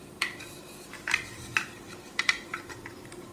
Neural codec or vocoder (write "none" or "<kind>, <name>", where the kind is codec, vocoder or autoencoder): vocoder, BigVGAN v2